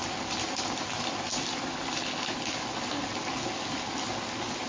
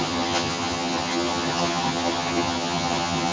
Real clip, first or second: first